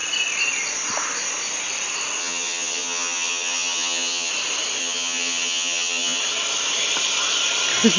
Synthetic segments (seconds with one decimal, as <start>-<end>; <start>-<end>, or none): 2.2-4.3; 4.8-6.2